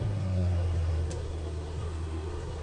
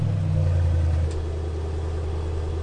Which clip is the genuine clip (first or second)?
second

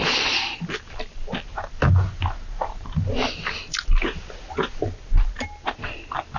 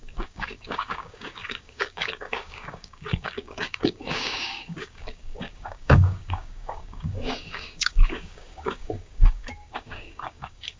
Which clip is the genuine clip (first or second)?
first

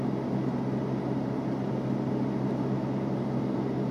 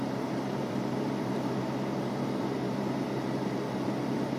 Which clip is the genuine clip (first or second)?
first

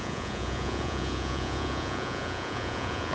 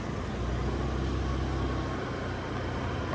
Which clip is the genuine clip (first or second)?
second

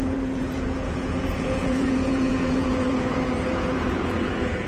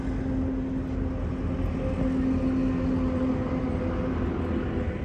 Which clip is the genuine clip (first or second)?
second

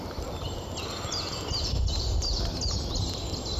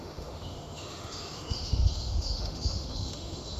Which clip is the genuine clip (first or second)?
first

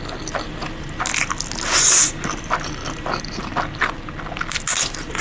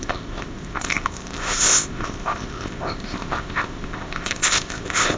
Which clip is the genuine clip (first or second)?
first